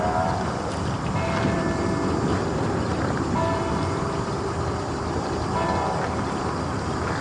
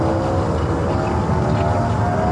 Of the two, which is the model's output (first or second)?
first